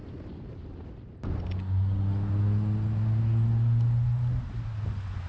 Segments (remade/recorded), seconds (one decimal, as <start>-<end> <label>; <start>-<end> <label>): 0.0-5.3 recorded